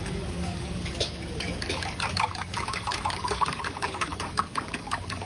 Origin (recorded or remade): remade